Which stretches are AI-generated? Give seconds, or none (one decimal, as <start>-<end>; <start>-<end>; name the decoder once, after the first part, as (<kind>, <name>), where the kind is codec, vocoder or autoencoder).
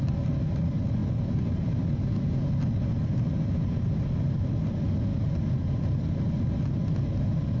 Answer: none